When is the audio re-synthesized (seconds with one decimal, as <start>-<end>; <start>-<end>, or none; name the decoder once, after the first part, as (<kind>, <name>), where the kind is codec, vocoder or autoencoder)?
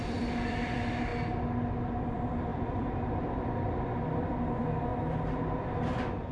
0.0-1.1 (vocoder, BigVGAN v2); 2.0-4.9; 5.6-6.3